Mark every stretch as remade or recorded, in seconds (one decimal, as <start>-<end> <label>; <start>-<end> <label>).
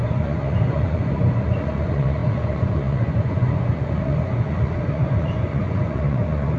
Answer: 0.0-6.6 remade